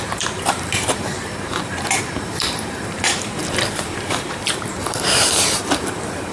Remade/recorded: remade